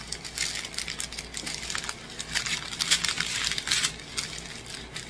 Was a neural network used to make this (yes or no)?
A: no